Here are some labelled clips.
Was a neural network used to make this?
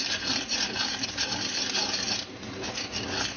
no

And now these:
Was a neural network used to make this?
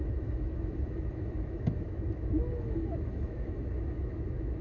yes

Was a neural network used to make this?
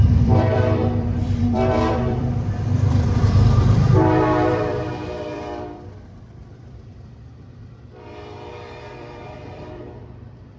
yes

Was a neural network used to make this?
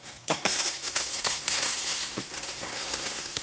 yes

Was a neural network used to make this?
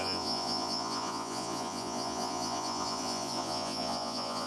yes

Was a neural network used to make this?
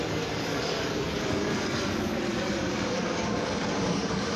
yes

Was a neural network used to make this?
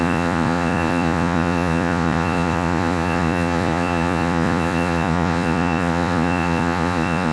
yes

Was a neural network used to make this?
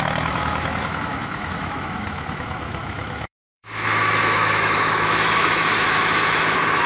yes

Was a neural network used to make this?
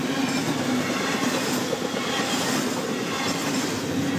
no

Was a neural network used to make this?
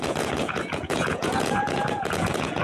yes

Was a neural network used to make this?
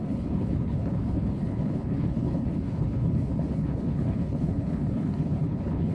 yes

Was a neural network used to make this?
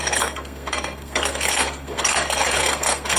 yes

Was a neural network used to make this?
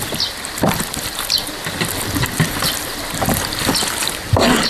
no